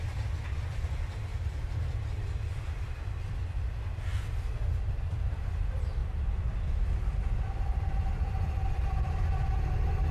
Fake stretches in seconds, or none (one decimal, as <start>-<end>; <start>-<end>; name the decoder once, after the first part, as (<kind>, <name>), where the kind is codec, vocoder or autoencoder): 1.3-3.6 (vocoder, BigVGAN v2); 6.0-9.5